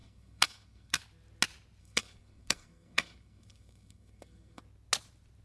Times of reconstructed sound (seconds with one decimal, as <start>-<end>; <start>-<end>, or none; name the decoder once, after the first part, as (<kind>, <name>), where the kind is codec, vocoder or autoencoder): 0.0-1.0 (codec, SNAC); 1.8-4.6